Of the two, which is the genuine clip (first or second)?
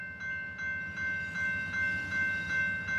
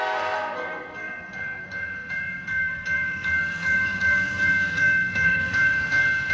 first